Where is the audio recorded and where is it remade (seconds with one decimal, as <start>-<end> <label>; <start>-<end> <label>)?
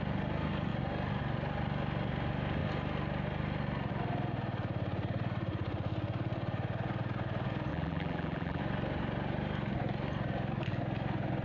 0.0-7.7 recorded; 7.7-8.6 remade; 8.6-11.4 recorded